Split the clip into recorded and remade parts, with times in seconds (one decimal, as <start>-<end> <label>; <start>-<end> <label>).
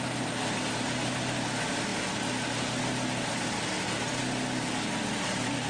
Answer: 0.0-5.7 recorded